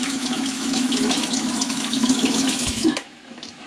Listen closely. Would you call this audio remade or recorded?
remade